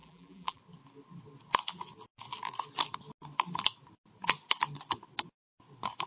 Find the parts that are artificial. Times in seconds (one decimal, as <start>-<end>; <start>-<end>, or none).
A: 0.0-0.6